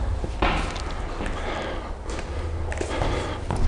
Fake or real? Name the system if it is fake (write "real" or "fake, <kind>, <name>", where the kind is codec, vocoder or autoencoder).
real